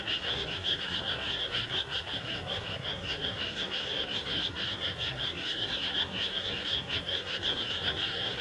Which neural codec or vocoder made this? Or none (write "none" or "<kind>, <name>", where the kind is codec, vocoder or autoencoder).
codec, SNAC